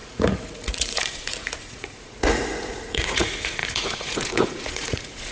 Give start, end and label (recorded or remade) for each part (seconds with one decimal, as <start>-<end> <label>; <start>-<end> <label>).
0.0-5.3 remade